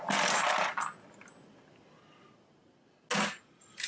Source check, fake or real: real